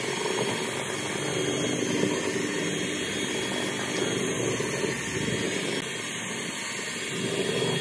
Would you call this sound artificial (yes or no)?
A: no